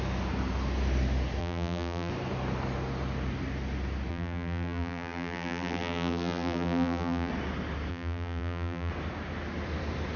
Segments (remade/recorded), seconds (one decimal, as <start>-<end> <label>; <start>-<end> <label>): 0.0-1.4 recorded; 1.4-2.1 remade; 2.1-4.1 recorded; 4.1-7.3 remade; 7.3-7.9 recorded; 7.9-8.9 remade; 8.9-10.2 recorded